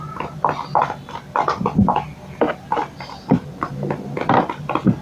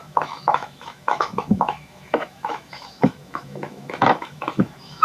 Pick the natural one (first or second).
first